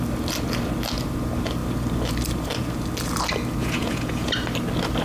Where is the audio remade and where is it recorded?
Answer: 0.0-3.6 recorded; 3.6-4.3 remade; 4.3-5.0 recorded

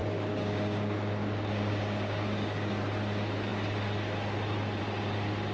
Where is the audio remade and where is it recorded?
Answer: 0.0-2.7 remade; 2.7-5.5 recorded

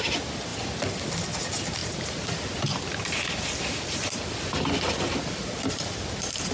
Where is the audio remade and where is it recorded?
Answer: 0.0-6.5 recorded

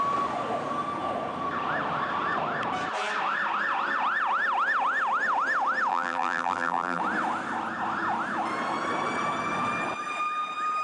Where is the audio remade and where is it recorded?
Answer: 0.0-5.9 recorded; 5.9-7.0 remade; 7.0-10.8 recorded